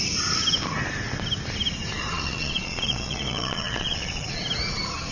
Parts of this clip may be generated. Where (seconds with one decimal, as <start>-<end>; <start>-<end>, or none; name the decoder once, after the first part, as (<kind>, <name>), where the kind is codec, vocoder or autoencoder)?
2.0-4.4 (vocoder, Vocos)